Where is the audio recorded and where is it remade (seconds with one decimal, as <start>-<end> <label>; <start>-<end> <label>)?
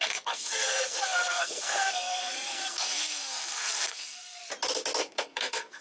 0.0-4.4 remade; 4.4-5.0 recorded; 5.0-5.8 remade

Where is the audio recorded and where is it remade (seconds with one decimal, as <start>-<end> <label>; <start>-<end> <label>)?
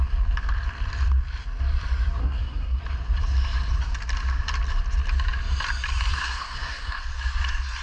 0.0-2.2 recorded; 2.2-2.8 remade; 2.8-6.1 recorded; 6.1-7.0 remade; 7.0-7.8 recorded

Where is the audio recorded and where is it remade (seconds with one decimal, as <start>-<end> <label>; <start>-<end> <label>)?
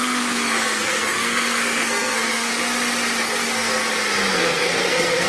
0.0-2.5 remade; 2.5-3.2 recorded; 3.2-3.8 remade; 3.8-4.3 recorded; 4.3-5.3 remade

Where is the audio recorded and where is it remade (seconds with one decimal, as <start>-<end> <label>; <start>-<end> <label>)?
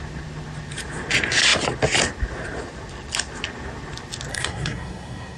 0.0-4.3 recorded; 4.3-5.4 remade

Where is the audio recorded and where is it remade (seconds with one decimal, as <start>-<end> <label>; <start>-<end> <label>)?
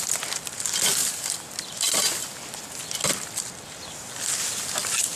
0.0-5.2 recorded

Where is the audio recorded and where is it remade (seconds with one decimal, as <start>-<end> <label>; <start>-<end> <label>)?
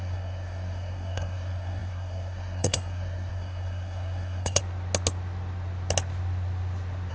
0.0-4.6 remade; 4.6-7.1 recorded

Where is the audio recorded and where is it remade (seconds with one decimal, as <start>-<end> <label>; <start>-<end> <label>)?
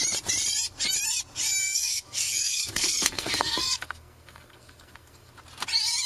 0.0-1.6 recorded; 1.6-5.3 remade; 5.3-6.1 recorded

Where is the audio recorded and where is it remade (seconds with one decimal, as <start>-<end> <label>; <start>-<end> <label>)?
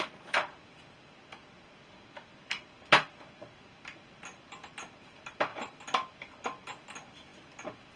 0.0-8.0 recorded